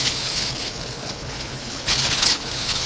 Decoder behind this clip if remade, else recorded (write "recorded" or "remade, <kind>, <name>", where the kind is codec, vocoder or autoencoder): remade, codec, HILCodec